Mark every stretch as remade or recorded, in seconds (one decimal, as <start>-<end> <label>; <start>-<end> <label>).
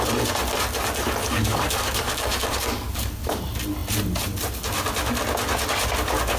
0.0-1.2 recorded; 1.2-3.4 remade; 3.4-6.4 recorded